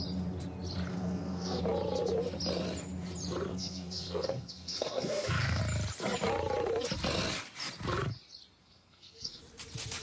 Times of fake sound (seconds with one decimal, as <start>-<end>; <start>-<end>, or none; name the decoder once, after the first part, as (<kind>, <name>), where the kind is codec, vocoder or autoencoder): 0.9-1.6 (codec, SNAC); 3.5-5.6; 8.6-9.4